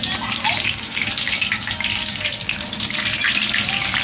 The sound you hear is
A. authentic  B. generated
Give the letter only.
A